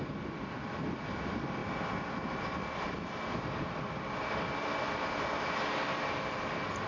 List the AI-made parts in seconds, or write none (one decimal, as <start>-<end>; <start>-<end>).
none